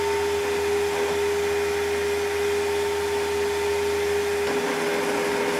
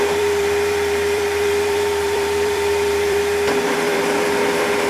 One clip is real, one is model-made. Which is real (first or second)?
first